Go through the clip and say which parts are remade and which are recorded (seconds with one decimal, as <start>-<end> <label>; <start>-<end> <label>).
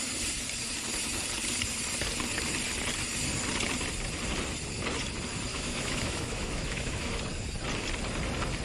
0.0-5.5 recorded; 5.5-7.2 remade; 7.2-8.6 recorded